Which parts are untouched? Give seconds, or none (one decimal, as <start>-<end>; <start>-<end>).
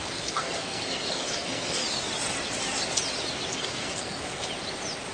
1.8-3.6; 4.4-5.1